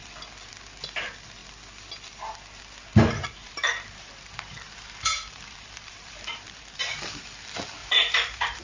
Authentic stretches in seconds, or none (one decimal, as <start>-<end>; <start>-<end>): 0.0-3.4; 7.2-7.8